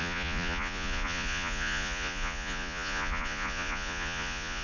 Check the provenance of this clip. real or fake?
fake